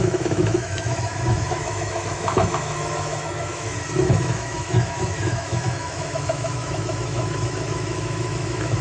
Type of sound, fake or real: fake